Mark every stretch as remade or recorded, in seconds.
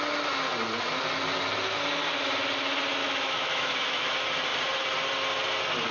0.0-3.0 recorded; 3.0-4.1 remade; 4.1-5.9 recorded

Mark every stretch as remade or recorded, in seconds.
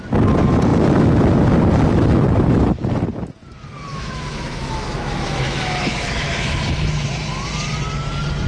0.0-3.9 recorded; 3.9-6.6 remade; 6.6-8.5 recorded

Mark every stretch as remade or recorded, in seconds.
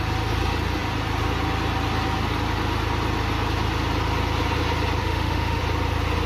0.0-5.0 recorded; 5.0-5.6 remade; 5.6-6.3 recorded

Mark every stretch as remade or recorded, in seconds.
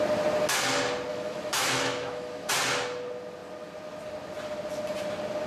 0.0-1.1 recorded; 1.1-2.5 remade; 2.5-5.5 recorded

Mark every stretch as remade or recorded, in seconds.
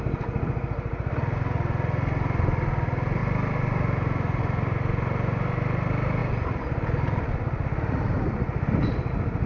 0.0-9.5 recorded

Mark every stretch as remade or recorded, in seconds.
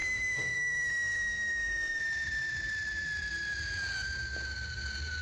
0.0-2.0 remade; 2.0-5.2 recorded